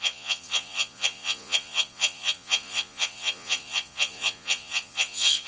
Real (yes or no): no